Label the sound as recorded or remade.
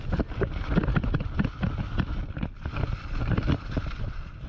recorded